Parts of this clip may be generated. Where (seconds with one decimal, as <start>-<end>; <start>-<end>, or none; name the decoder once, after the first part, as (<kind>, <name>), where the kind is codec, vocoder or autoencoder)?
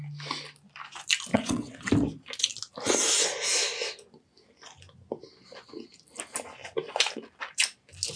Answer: 1.3-1.9 (vocoder, WaveNeXt)